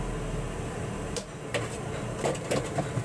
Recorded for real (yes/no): yes